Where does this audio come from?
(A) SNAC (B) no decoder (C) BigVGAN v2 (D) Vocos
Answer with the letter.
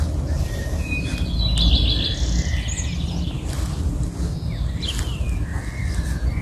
B